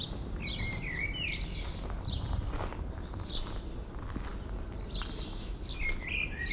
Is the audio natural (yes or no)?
yes